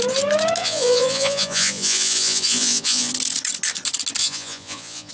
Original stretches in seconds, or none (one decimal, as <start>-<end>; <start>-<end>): 0.0-0.6; 3.1-4.2